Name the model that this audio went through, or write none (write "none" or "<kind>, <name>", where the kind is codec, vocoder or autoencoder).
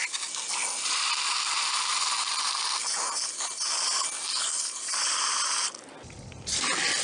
none